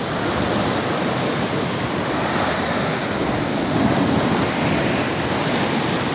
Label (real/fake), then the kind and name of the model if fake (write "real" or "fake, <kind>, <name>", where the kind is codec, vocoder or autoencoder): real